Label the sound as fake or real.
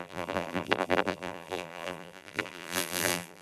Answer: fake